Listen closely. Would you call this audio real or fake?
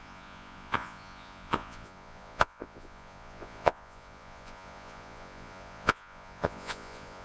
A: fake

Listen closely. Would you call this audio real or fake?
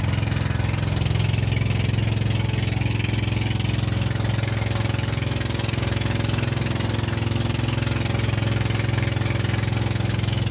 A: real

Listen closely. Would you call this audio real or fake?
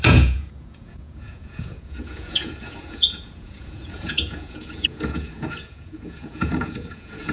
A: fake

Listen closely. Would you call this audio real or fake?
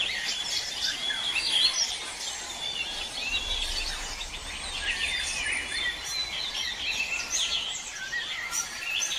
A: real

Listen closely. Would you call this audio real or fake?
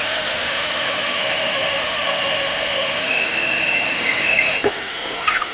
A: fake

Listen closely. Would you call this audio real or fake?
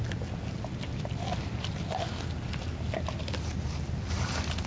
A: real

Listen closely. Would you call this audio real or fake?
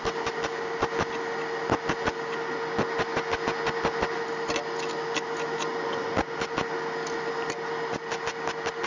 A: real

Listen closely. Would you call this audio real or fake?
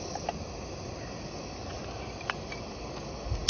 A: real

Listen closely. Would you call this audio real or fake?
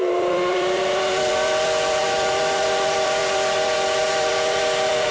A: fake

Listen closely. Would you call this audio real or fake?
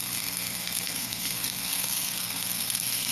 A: fake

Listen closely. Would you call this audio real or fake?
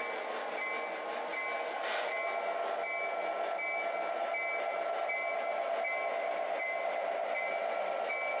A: real